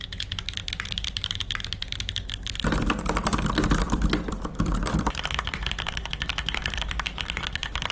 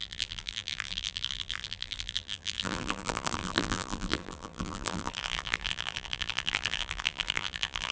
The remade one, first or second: second